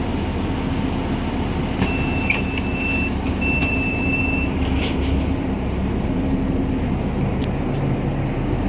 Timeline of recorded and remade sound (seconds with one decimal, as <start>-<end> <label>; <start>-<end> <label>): 0.0-3.6 recorded; 3.6-6.9 remade; 6.9-8.7 recorded